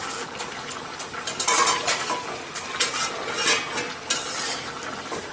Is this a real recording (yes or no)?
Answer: yes